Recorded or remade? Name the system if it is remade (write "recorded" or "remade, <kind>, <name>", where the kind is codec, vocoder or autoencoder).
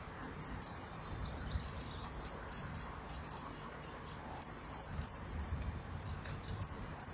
remade, vocoder, BigVGAN v2